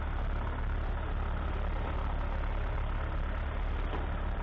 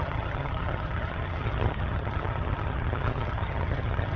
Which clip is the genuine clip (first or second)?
first